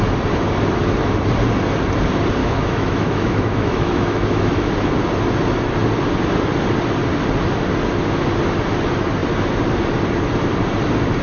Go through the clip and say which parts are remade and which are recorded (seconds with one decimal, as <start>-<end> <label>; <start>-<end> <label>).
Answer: 0.0-2.4 recorded; 2.4-4.7 remade; 4.7-11.2 recorded